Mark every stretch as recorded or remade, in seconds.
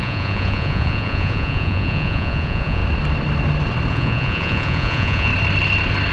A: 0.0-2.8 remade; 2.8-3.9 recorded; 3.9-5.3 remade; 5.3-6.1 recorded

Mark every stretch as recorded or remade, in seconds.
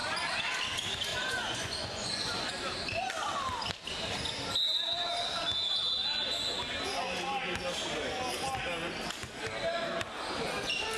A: 0.0-1.1 recorded; 1.1-2.5 remade; 2.5-11.0 recorded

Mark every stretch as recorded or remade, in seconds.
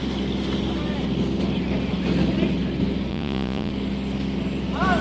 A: 0.0-3.1 recorded; 3.1-3.7 remade; 3.7-5.0 recorded